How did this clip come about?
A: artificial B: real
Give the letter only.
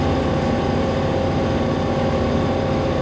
B